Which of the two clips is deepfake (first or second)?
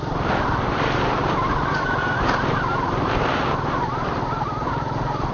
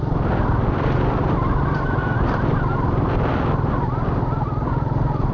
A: first